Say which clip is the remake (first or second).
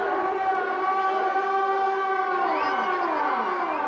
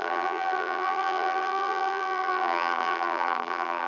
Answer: second